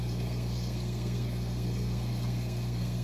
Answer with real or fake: fake